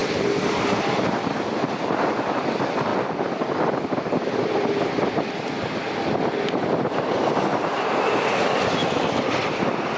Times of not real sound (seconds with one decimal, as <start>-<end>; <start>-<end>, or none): 0.0-2.4